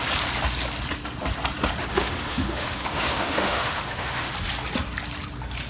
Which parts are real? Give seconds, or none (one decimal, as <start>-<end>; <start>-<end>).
0.0-1.9; 4.3-5.7